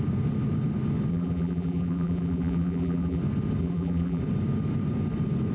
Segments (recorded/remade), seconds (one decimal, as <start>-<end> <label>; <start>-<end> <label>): 0.0-1.1 recorded; 1.1-3.2 remade; 3.2-3.6 recorded; 3.6-4.2 remade; 4.2-5.5 recorded